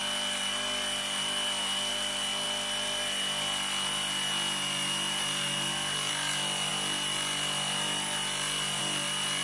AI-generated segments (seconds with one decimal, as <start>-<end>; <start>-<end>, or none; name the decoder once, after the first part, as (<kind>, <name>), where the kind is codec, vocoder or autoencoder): none